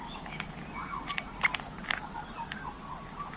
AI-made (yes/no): no